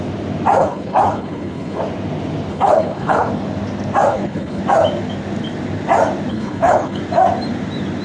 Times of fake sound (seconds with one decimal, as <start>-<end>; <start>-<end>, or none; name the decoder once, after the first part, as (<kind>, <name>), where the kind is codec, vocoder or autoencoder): 0.6-1.8 (codec, HILCodec); 2.5-3.3; 4.1-4.6; 6.3-7.0